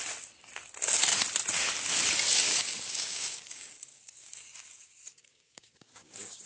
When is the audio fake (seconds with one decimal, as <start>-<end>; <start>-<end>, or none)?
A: 2.5-6.5